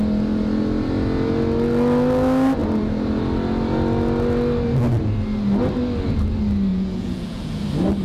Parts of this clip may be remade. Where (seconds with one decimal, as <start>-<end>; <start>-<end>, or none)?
6.7-7.6

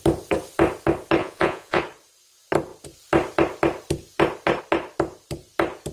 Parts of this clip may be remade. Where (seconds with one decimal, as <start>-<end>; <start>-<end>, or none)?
1.2-1.8

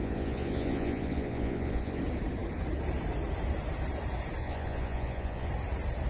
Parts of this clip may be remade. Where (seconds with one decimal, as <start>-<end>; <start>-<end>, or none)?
0.0-2.0; 4.4-5.5

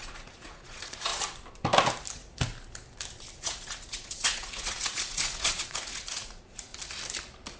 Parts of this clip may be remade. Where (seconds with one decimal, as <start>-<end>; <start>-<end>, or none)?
0.0-1.1; 3.3-6.7

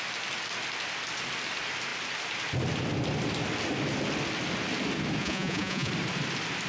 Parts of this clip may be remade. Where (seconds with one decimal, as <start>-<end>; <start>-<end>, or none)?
5.2-5.9

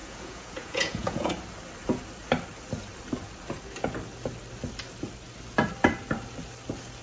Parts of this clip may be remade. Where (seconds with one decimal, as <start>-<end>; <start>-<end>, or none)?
0.0-1.3